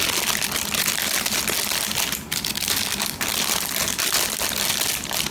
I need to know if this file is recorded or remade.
recorded